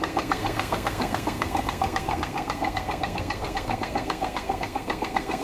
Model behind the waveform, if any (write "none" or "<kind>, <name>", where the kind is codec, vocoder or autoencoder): codec, SNAC